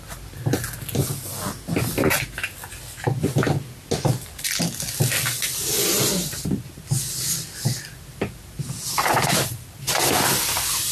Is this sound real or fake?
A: real